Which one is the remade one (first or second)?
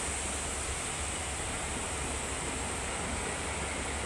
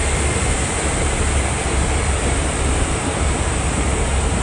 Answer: second